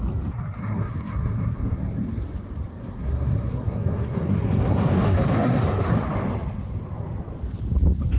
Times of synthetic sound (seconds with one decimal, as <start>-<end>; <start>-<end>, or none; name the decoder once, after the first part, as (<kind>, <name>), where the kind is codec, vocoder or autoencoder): 0.6-1.8 (codec, SNAC); 2.8-5.9